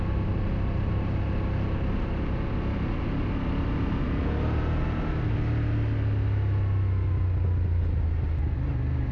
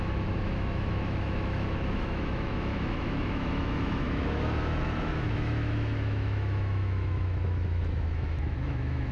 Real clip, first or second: first